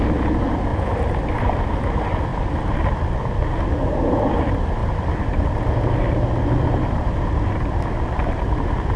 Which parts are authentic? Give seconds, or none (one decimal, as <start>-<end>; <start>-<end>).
0.0-0.7; 1.4-9.0